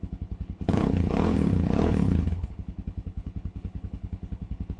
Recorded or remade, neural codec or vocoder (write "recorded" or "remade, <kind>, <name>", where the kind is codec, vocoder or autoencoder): remade, codec, HILCodec